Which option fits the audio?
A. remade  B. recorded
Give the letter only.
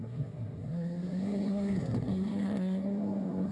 A